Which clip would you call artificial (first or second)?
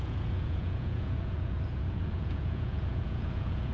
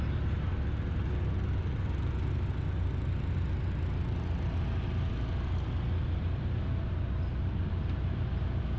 first